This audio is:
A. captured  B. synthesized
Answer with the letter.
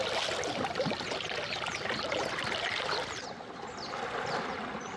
A